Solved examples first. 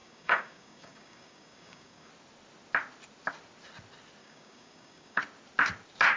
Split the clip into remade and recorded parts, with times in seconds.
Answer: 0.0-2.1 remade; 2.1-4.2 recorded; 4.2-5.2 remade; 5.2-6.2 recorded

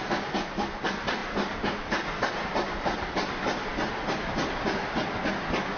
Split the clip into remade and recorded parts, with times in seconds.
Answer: 0.0-5.8 recorded

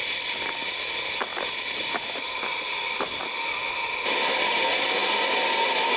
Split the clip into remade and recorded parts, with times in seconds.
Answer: 0.0-6.0 recorded